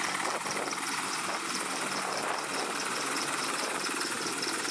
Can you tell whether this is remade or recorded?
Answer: remade